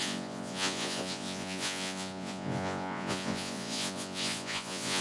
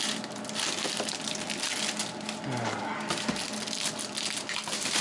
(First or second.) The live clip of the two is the second